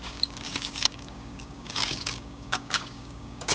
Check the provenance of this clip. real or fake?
fake